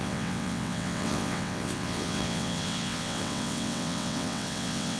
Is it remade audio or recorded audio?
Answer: remade